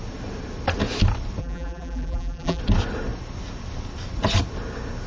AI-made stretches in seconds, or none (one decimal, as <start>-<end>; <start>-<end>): 1.4-2.6